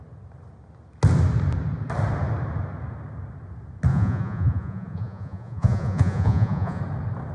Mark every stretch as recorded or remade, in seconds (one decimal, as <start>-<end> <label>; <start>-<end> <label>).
0.0-3.9 recorded; 3.9-6.8 remade; 6.8-7.3 recorded